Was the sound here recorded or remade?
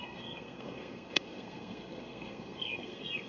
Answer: remade